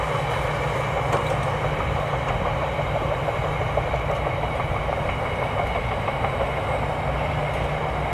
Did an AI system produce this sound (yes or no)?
no